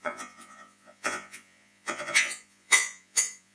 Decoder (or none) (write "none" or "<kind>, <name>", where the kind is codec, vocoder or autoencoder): vocoder, Vocos